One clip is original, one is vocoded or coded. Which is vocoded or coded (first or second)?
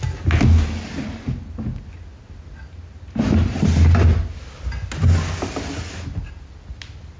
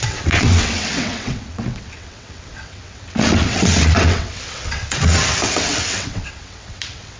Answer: second